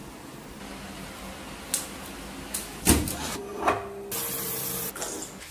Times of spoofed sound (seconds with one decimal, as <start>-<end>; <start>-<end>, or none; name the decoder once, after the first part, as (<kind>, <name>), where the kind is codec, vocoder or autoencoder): none